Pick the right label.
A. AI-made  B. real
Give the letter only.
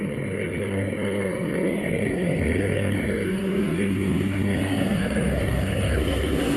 A